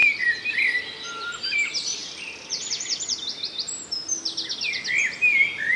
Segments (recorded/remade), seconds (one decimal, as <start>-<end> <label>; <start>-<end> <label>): 0.0-5.8 recorded